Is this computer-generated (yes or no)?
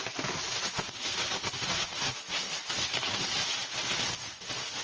no